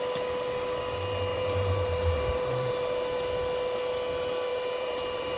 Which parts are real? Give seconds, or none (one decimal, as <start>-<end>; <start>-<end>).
0.0-1.3; 2.7-4.5